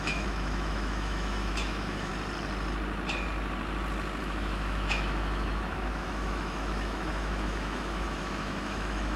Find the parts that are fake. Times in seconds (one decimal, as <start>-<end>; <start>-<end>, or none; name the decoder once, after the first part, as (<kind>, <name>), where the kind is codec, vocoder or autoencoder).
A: 0.0-2.1 (autoencoder, DAC-VAE); 4.2-9.2